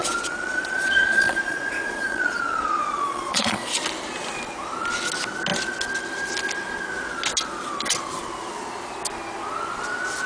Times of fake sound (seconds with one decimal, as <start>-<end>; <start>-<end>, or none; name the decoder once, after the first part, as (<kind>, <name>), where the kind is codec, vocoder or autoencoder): 0.0-3.7 (vocoder, Vocos)

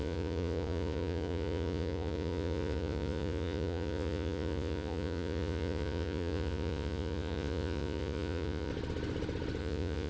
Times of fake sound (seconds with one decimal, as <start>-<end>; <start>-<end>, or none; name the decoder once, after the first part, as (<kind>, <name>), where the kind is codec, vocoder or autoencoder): 0.0-8.7 (vocoder, Vocos); 9.6-10.1

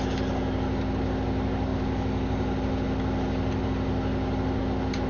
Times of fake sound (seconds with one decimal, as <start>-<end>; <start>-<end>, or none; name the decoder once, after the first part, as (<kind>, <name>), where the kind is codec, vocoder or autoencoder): none

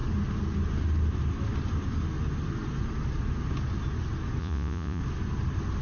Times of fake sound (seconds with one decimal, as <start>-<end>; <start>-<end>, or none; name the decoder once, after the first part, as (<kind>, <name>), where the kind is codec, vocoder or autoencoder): 4.4-5.0 (vocoder, Vocos)

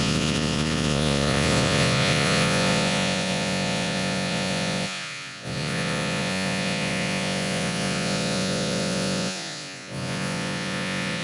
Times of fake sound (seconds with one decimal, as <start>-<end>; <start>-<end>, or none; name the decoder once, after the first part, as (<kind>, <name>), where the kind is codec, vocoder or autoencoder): 0.0-11.2 (vocoder, Vocos)

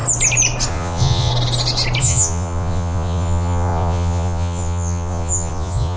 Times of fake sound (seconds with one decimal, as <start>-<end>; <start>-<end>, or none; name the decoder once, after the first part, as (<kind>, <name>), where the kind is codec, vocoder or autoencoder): 0.7-1.3 (vocoder, Vocos); 2.0-6.0